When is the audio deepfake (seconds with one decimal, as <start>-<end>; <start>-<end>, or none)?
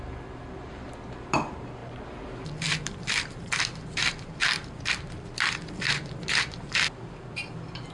0.0-1.8; 2.6-4.4; 5.5-7.9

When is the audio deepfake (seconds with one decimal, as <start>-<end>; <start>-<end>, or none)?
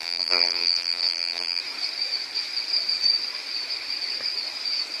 0.0-1.6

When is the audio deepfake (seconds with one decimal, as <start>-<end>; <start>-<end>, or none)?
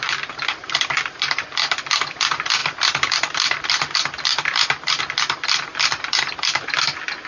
2.6-3.9; 4.3-5.0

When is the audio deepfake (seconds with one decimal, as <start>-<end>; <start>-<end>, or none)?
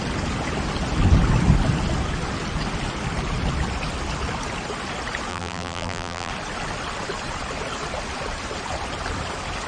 5.3-6.3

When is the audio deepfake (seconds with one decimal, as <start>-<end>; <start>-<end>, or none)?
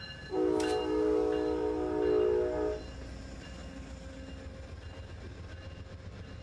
none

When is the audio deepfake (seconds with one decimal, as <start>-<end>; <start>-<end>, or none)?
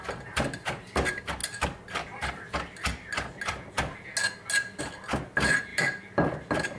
5.7-6.8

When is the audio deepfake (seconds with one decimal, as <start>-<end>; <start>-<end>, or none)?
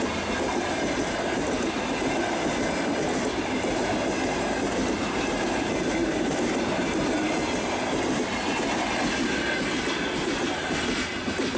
6.0-7.1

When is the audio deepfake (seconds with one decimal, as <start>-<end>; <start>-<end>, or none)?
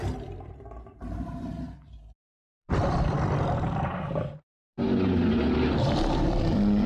0.0-1.6; 2.3-6.4